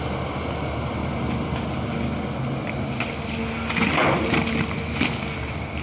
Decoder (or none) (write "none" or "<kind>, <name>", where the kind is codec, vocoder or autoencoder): none